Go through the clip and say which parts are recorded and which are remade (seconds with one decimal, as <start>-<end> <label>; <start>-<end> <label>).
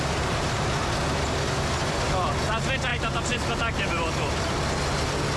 0.0-1.8 recorded; 1.8-2.3 remade; 2.3-2.9 recorded; 2.9-4.7 remade; 4.7-5.4 recorded